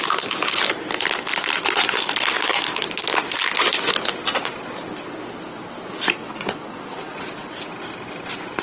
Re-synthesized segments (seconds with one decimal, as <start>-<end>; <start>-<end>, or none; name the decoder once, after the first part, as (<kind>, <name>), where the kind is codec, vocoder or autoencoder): 6.2-7.6 (vocoder, WaveNeXt)